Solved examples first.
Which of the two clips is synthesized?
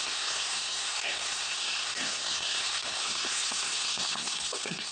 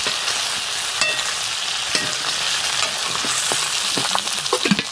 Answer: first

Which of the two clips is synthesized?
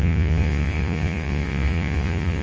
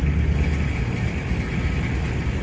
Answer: first